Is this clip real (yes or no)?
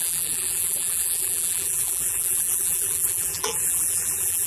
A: no